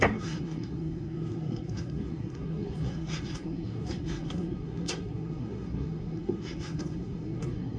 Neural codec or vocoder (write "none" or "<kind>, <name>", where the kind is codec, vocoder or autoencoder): codec, SNAC